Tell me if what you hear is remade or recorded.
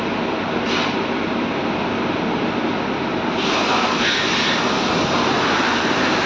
recorded